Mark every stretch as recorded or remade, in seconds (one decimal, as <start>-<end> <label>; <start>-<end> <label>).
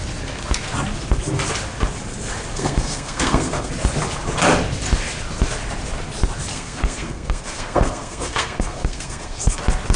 0.0-2.5 recorded; 2.5-3.7 remade; 3.7-6.5 recorded; 6.5-9.6 remade; 9.6-10.0 recorded